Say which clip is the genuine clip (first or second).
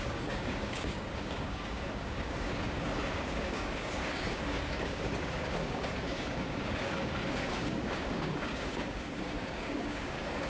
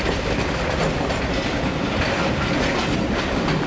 second